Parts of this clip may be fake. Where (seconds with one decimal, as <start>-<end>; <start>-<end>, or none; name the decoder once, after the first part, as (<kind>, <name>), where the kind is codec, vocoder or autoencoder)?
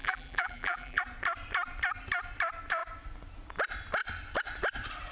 0.0-1.0 (vocoder, BigVGAN v2)